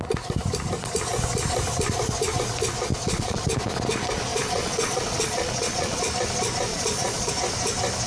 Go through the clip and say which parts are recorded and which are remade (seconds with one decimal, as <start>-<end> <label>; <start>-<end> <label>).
0.0-2.9 recorded; 2.9-3.5 remade; 3.5-4.3 recorded; 4.3-6.0 remade; 6.0-6.7 recorded; 6.7-7.3 remade; 7.3-8.1 recorded